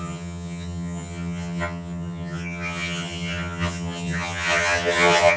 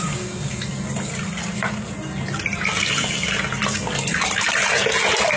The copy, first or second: first